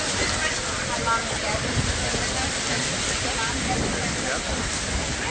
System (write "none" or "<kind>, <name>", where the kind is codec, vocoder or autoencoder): none